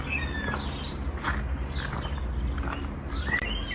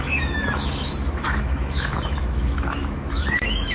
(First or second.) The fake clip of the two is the second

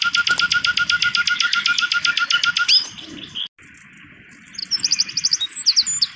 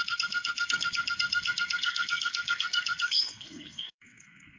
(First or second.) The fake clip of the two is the second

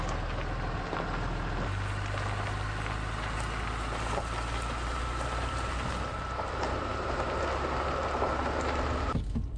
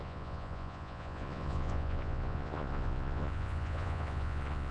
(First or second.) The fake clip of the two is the second